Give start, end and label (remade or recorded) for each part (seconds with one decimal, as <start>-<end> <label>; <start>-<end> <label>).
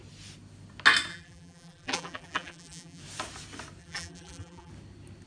0.0-1.1 recorded; 1.1-3.0 remade; 3.0-3.8 recorded; 3.8-4.7 remade; 4.7-5.3 recorded